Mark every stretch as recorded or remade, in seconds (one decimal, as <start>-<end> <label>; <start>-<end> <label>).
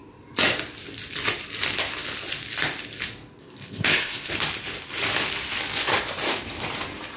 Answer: 0.0-3.4 recorded; 3.4-4.3 remade; 4.3-7.2 recorded